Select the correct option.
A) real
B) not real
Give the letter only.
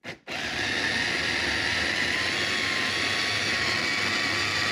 A